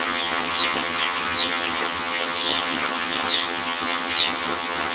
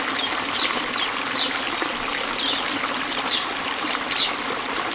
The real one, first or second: second